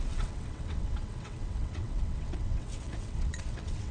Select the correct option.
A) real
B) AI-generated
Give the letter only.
B